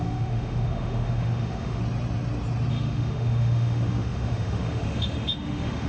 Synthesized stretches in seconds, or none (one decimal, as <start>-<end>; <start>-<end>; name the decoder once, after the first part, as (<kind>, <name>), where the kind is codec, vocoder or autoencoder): 0.0-1.8 (autoencoder, DAC-VAE); 2.7-5.9